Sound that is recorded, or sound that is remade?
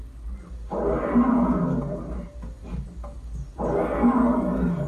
recorded